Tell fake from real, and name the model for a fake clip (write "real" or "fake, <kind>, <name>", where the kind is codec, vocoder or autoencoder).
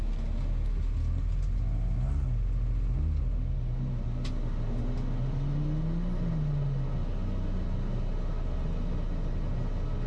real